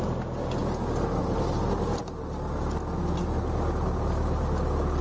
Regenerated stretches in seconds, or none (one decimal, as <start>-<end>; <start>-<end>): none